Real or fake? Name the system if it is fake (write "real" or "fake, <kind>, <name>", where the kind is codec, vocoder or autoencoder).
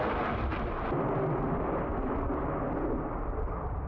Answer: real